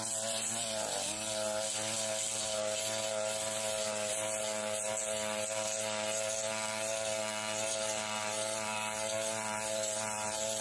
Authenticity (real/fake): real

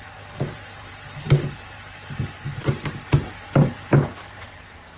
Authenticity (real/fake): fake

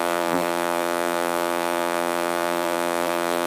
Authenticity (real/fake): fake